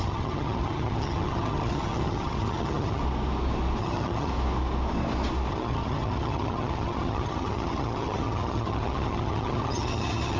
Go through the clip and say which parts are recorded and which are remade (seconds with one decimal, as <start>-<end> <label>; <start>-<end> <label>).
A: 0.0-3.0 remade; 3.0-3.8 recorded; 3.8-4.3 remade; 4.3-5.5 recorded; 5.5-10.4 remade